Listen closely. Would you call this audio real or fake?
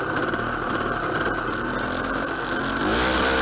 real